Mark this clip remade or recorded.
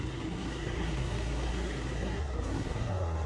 remade